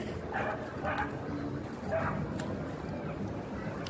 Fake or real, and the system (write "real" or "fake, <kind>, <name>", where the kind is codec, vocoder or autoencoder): real